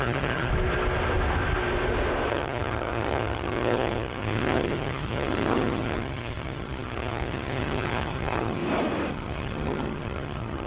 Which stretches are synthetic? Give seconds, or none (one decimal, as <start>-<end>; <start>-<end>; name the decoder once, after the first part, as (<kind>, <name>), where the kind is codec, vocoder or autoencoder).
0.0-0.5 (vocoder, HiFi-GAN); 2.3-8.6; 9.1-10.7